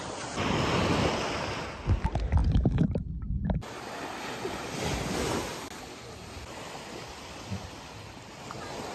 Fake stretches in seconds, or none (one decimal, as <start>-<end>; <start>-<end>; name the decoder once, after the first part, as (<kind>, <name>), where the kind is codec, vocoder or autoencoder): none